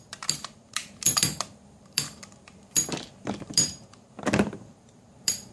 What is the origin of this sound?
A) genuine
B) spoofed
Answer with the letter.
B